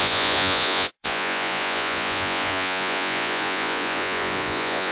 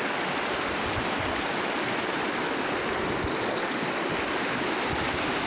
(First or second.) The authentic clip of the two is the second